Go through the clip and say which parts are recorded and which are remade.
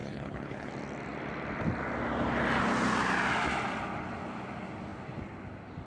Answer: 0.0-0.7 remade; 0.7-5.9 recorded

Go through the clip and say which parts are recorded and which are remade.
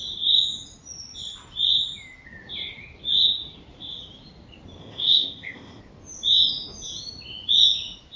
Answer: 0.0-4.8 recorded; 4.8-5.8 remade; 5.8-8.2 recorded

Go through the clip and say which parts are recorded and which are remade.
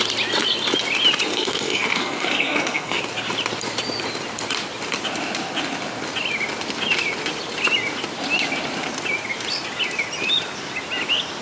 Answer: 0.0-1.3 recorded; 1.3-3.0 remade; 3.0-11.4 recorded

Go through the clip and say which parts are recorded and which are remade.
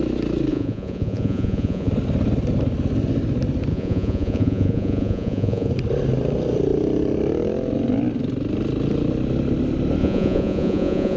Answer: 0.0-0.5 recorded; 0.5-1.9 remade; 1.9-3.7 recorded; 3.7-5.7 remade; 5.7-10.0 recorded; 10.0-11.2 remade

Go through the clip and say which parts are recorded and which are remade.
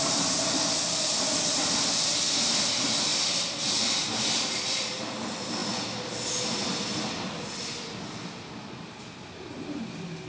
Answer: 0.0-10.3 recorded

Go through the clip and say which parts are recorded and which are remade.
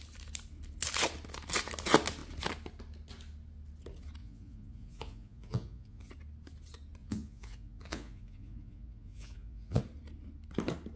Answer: 0.0-4.2 recorded; 4.2-6.1 remade; 6.1-7.0 recorded; 7.0-9.8 remade; 9.8-11.0 recorded